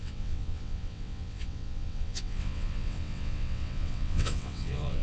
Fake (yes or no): yes